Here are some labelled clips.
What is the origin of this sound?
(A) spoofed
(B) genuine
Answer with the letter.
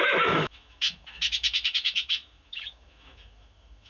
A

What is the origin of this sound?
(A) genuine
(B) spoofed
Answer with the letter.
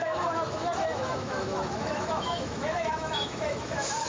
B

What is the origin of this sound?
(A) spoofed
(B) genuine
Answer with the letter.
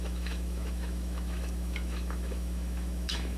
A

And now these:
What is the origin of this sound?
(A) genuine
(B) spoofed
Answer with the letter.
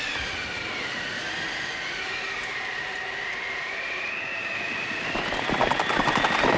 A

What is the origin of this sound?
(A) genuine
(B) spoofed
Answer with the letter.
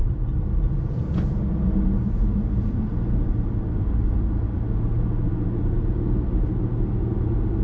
A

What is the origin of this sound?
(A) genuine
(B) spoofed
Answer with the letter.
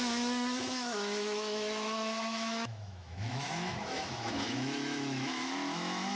B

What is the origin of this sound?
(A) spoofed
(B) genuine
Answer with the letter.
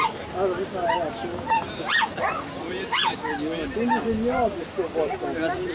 B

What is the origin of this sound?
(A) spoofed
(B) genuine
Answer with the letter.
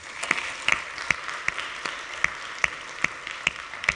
B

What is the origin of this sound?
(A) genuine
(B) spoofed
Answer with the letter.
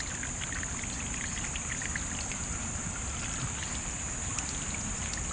A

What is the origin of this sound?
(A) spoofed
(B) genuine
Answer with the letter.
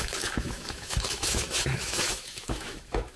A